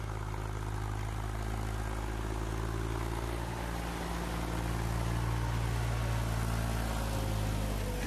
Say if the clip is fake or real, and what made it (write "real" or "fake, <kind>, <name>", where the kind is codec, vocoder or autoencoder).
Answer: real